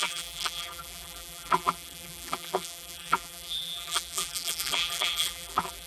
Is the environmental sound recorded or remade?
remade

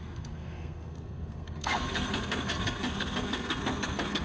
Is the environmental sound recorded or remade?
remade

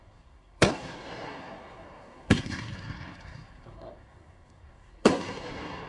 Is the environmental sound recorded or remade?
remade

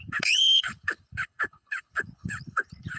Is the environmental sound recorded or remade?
remade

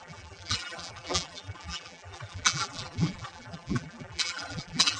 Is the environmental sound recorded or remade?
remade